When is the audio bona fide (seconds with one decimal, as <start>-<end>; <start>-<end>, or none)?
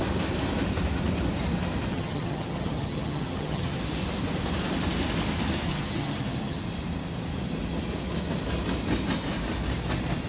0.0-1.9; 3.8-5.7; 6.6-10.3